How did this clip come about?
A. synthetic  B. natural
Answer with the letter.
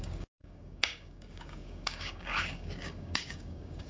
A